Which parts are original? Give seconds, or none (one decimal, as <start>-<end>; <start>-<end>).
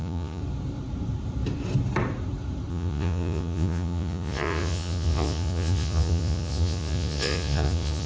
0.4-2.7